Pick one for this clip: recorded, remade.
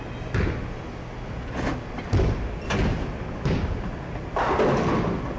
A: recorded